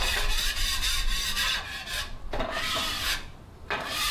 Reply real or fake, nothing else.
real